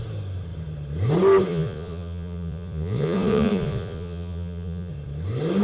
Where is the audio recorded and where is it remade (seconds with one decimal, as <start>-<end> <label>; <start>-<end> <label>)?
0.0-1.5 recorded; 1.5-4.9 remade; 4.9-5.6 recorded